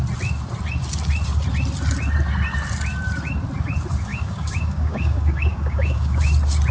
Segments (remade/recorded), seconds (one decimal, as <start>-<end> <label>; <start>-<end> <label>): 0.0-4.1 recorded; 4.1-6.2 remade; 6.2-6.7 recorded